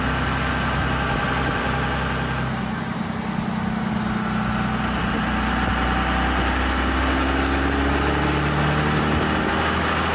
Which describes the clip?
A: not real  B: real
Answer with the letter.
B